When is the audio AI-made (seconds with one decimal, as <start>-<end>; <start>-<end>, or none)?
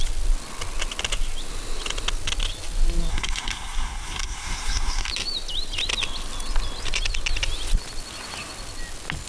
3.1-5.1